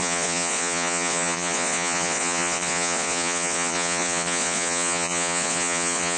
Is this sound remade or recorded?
remade